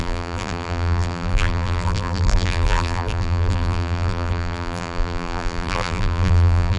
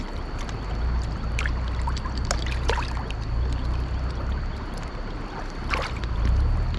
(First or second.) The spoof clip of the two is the first